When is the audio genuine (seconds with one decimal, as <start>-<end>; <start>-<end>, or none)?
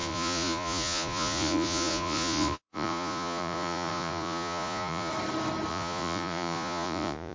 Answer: 5.1-5.7